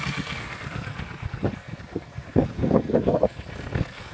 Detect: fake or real fake